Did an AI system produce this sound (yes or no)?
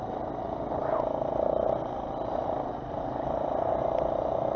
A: no